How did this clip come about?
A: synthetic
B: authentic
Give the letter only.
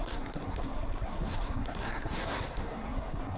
A